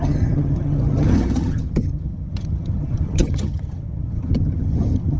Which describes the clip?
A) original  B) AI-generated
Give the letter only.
B